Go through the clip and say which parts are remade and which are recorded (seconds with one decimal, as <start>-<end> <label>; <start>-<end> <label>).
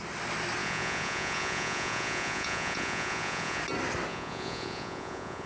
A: 0.0-0.6 recorded; 0.6-3.6 remade; 3.6-4.1 recorded; 4.1-5.5 remade